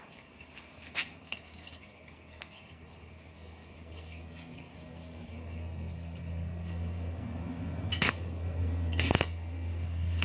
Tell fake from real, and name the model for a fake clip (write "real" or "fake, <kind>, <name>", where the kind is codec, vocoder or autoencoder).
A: fake, codec, SNAC